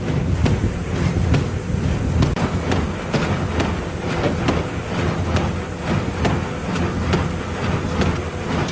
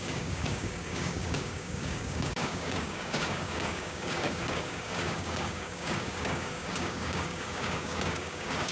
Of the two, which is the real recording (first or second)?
first